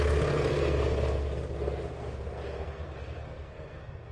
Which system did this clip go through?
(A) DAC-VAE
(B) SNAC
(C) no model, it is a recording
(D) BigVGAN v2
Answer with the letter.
B